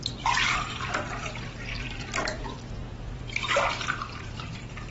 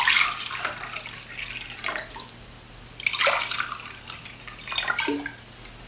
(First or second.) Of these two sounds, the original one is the second